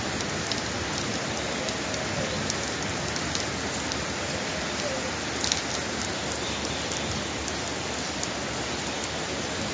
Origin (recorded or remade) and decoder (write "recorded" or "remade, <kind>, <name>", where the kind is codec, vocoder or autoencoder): recorded